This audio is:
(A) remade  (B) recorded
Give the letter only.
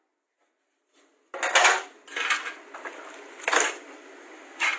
B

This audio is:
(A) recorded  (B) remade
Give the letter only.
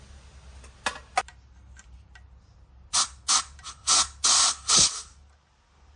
A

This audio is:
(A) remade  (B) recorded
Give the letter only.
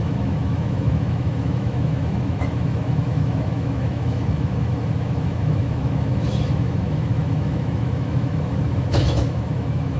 A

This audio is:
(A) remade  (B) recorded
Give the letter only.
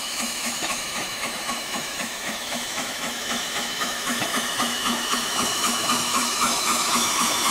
A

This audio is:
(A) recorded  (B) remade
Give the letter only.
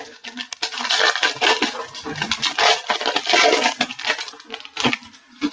A